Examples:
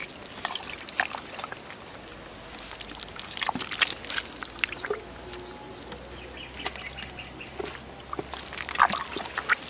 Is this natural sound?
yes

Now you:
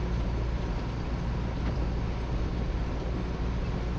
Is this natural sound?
yes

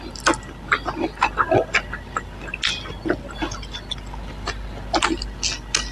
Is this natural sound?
yes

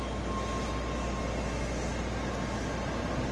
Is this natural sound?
yes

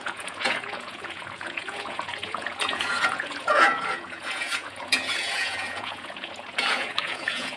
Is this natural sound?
no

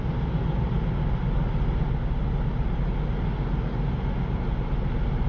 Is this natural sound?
yes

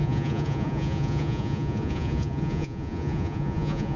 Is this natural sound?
no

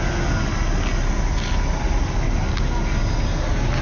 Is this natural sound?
yes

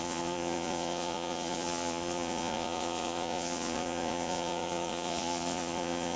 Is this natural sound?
no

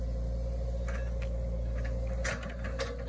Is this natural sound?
yes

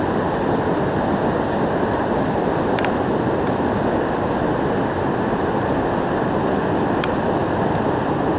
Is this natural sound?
yes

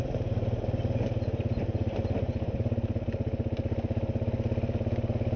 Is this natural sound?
yes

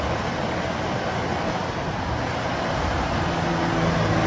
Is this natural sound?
yes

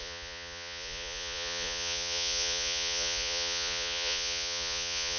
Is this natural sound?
no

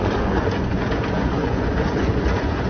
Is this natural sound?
no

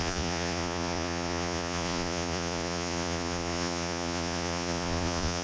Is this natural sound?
no